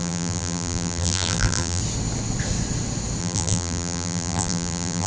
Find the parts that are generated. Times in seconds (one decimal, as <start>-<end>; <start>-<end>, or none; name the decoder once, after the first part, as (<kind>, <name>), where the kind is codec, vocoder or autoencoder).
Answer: 0.0-1.8 (vocoder, BigVGAN v2); 3.2-5.1